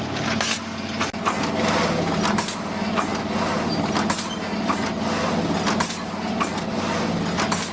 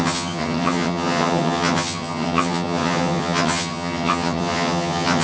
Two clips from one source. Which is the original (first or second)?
first